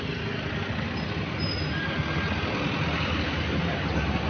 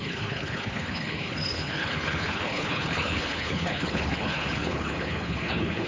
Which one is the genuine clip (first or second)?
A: first